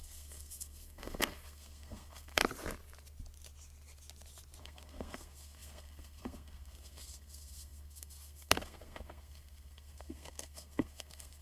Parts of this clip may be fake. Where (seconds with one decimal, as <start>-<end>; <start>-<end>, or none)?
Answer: 0.0-2.4; 4.6-11.4